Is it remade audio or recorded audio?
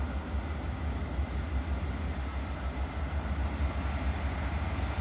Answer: recorded